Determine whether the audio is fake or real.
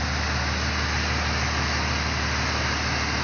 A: real